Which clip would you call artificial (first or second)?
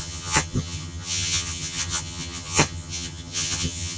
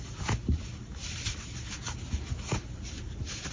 first